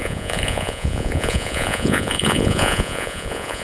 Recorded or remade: remade